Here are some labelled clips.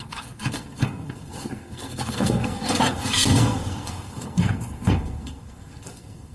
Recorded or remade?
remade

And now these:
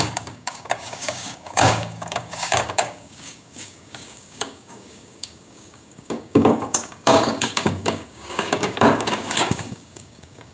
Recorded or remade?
remade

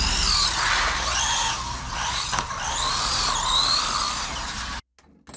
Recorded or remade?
recorded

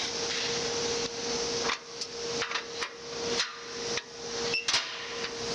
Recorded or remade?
recorded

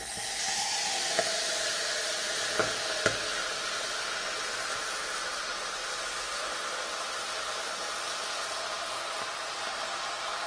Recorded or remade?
recorded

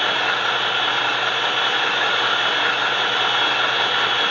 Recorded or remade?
recorded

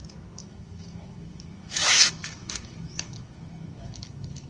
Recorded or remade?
remade